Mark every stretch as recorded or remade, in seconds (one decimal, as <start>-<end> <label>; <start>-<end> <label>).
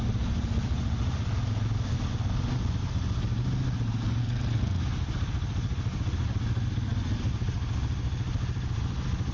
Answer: 0.0-4.2 recorded; 4.2-4.8 remade; 4.8-9.3 recorded